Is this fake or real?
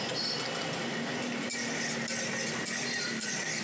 real